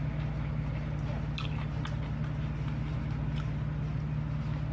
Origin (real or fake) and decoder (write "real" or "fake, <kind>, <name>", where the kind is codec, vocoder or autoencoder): real